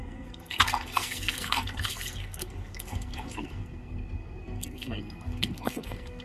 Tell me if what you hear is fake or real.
fake